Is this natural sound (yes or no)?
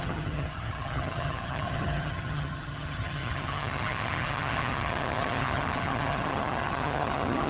no